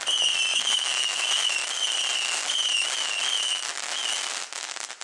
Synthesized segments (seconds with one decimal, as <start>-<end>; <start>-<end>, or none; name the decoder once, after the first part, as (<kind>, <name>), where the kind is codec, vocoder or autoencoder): 0.5-1.5 (autoencoder, DAC-VAE)